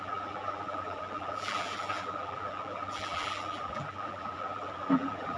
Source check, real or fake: fake